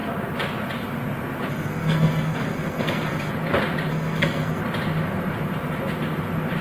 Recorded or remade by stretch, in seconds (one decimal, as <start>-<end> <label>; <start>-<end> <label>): 0.0-1.5 recorded; 1.5-3.3 remade; 3.3-3.9 recorded; 3.9-4.6 remade; 4.6-6.6 recorded